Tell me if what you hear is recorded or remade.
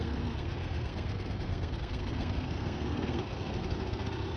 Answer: remade